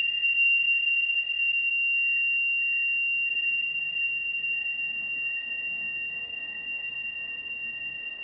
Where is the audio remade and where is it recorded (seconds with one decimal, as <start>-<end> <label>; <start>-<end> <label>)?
0.0-1.7 remade; 1.7-3.3 recorded; 3.3-8.2 remade

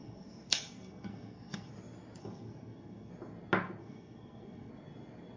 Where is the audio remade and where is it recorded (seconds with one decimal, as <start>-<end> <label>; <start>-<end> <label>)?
0.0-1.7 remade; 1.7-2.2 recorded; 2.2-3.1 remade; 3.1-3.8 recorded; 3.8-4.7 remade; 4.7-5.4 recorded

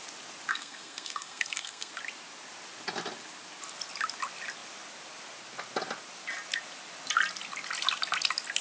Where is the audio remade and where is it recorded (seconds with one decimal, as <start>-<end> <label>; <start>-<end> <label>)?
0.0-0.5 recorded; 0.5-1.9 remade; 1.9-8.6 recorded

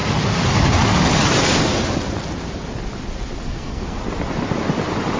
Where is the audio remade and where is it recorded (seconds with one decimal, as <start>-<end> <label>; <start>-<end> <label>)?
0.0-3.5 recorded; 3.5-4.0 remade; 4.0-5.2 recorded

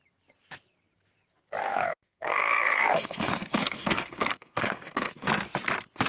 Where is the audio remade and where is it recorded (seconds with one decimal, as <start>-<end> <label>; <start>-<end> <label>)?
0.0-1.6 recorded; 1.6-5.3 remade; 5.3-6.1 recorded

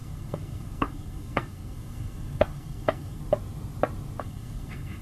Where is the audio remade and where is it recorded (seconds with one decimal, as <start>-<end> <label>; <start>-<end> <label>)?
0.0-3.2 remade; 3.2-4.2 recorded; 4.2-5.0 remade

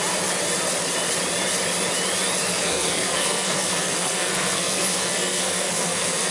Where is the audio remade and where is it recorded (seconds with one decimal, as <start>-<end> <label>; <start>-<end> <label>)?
0.0-2.5 recorded; 2.5-6.3 remade

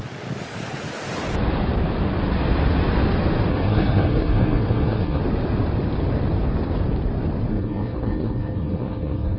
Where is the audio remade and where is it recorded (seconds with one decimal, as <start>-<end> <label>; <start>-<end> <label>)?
0.0-3.5 recorded; 3.5-5.2 remade; 5.2-7.5 recorded; 7.5-9.4 remade